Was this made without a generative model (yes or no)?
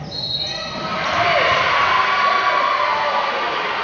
yes